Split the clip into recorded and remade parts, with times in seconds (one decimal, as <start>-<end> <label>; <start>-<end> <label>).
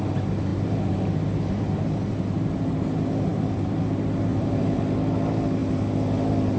0.0-3.3 recorded; 3.3-3.8 remade; 3.8-4.3 recorded; 4.3-4.8 remade; 4.8-6.6 recorded